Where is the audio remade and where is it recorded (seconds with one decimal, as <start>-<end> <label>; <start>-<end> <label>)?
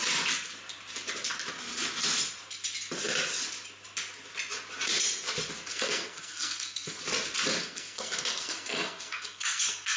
0.0-5.7 recorded; 5.7-7.0 remade; 7.0-7.6 recorded; 7.6-10.0 remade